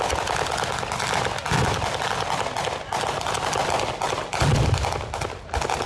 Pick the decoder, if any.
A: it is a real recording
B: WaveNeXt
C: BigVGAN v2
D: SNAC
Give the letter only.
A